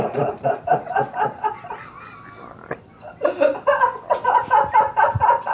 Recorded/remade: recorded